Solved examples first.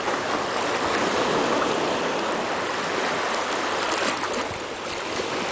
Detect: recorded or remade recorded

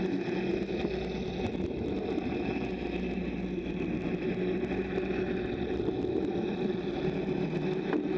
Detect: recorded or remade recorded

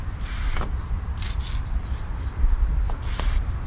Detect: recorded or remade remade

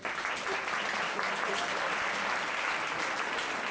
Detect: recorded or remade recorded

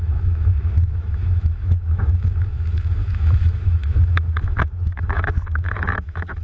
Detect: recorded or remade remade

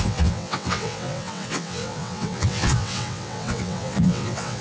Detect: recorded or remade remade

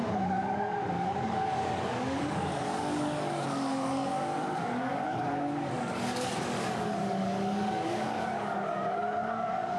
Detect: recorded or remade remade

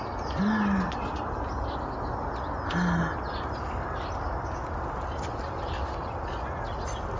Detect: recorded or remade recorded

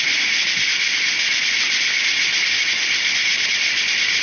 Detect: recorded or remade recorded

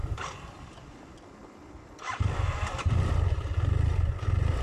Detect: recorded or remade remade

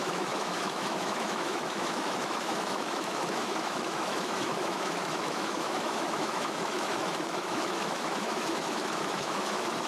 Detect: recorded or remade remade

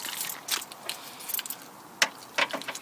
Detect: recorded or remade recorded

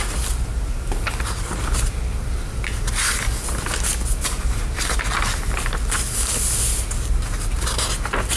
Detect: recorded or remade recorded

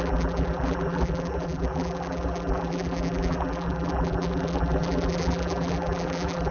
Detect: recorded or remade remade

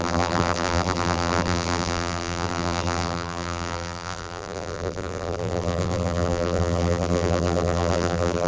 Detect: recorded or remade remade